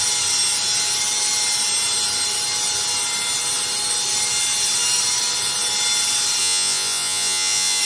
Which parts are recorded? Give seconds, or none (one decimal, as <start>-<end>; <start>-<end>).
0.0-6.4